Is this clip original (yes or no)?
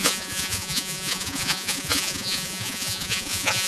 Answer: no